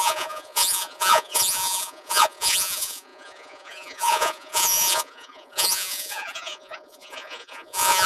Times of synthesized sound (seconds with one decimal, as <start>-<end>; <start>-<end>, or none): 0.0-8.1